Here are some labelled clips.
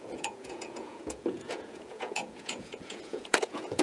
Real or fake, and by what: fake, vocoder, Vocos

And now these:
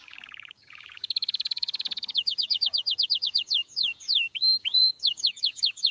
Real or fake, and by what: fake, codec, DAC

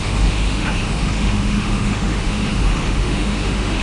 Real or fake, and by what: fake, autoencoder, DAC-VAE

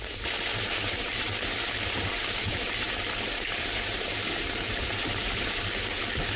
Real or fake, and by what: fake, vocoder, BigVGAN v2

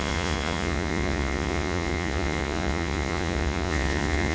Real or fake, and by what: fake, vocoder, Vocos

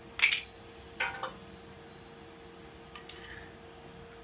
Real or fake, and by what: real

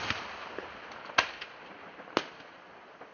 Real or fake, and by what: real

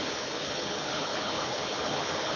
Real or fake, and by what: fake, codec, HILCodec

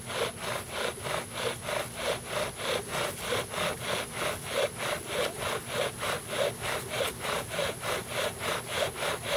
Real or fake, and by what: real